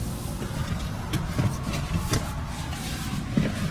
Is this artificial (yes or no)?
no